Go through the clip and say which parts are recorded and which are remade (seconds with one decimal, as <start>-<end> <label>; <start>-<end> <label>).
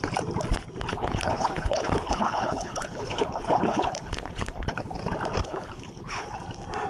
0.0-0.9 recorded; 0.9-5.0 remade; 5.0-5.4 recorded; 5.4-6.4 remade; 6.4-6.9 recorded